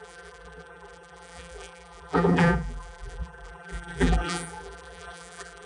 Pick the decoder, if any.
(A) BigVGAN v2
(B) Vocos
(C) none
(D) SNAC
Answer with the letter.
A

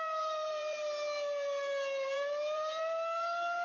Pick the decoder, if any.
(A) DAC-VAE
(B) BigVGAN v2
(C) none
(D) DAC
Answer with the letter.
B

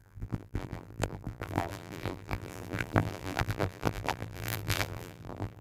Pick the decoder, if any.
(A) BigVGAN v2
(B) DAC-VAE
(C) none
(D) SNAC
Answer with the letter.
A